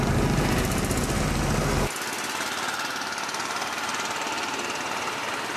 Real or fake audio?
real